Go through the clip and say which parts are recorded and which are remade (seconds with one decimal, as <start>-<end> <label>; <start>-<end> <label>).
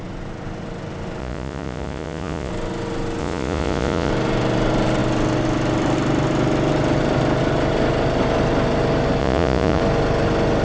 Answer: 0.0-1.2 recorded; 1.2-2.5 remade; 2.5-3.2 recorded; 3.2-4.1 remade; 4.1-9.2 recorded; 9.2-9.8 remade; 9.8-10.6 recorded